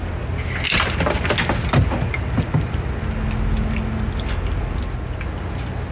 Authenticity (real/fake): real